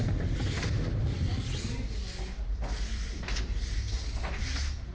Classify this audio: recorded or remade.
recorded